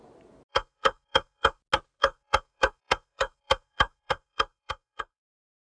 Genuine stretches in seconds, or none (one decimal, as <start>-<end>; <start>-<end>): 0.0-0.5; 1.6-2.0